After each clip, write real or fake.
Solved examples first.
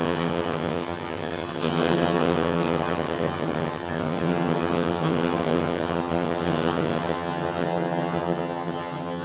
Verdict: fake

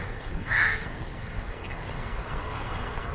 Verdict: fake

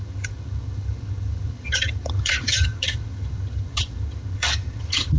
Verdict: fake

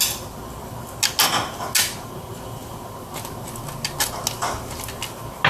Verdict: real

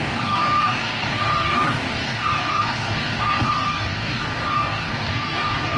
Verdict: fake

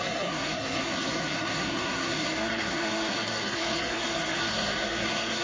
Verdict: fake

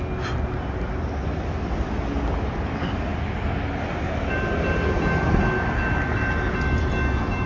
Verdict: real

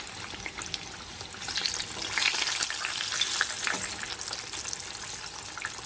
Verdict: real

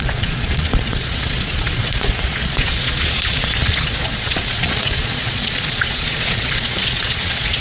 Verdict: fake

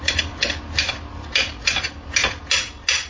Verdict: real